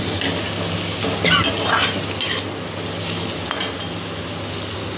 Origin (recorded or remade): recorded